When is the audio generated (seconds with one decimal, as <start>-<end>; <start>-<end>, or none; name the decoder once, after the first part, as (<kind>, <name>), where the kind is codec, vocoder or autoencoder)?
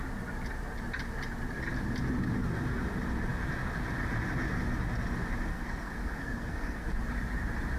5.5-7.0 (codec, SNAC)